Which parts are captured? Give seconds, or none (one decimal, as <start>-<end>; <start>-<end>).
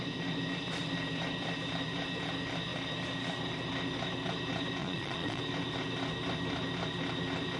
0.0-4.8; 5.4-7.6